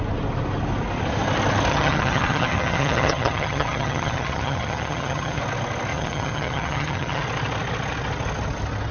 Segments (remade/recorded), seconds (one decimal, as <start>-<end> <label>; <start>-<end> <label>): 0.0-1.7 recorded; 1.7-5.4 remade; 5.4-5.9 recorded; 5.9-7.2 remade; 7.2-8.9 recorded